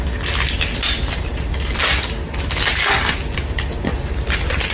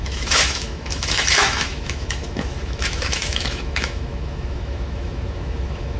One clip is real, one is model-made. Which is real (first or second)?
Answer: first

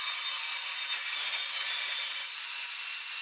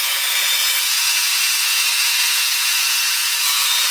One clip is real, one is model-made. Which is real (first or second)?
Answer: first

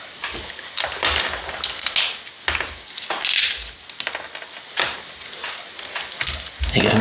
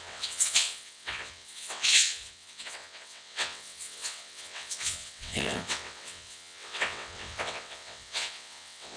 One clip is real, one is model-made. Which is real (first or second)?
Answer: first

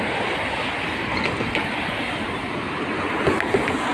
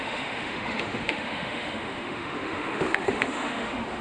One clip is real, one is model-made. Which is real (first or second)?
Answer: first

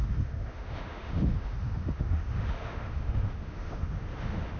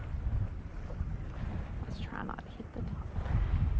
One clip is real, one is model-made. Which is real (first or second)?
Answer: second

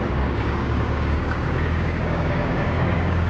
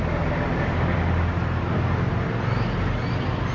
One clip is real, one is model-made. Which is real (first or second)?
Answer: second